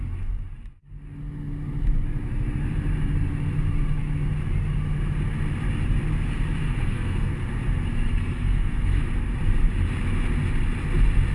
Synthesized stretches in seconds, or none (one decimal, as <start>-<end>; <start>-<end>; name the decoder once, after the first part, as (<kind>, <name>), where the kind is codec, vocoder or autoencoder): 6.6-7.3 (codec, SNAC); 8.1-9.0